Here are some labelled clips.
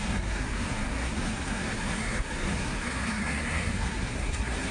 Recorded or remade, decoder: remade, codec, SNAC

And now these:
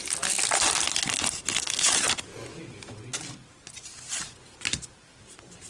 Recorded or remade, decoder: recorded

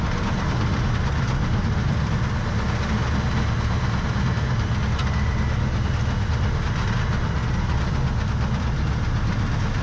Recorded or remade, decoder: recorded